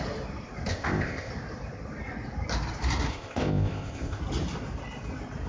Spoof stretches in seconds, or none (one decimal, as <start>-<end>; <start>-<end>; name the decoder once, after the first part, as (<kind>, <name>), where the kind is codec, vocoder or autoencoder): 0.7-1.3 (codec, ZipCodec); 3.1-4.2